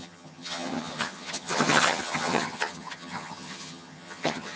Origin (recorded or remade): remade